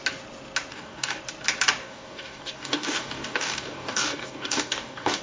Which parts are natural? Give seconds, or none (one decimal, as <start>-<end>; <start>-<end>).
0.0-0.7; 1.2-1.8